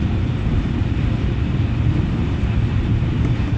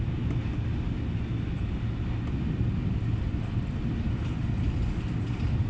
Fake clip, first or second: first